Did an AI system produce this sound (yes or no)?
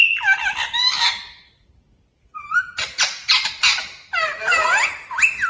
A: no